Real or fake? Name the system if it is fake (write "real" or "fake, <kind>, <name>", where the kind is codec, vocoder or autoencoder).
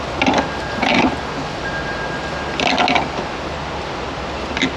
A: real